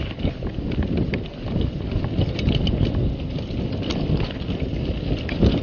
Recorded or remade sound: recorded